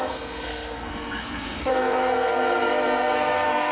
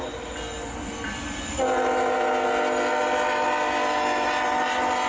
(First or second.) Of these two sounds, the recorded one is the second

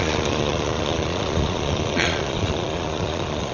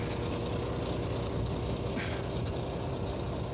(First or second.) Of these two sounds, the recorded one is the second